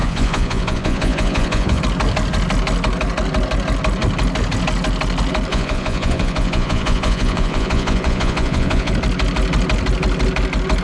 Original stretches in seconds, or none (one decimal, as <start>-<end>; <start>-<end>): 1.8-5.5; 8.9-10.8